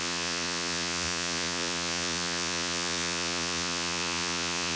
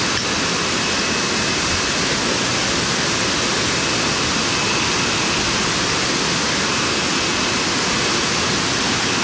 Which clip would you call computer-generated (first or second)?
first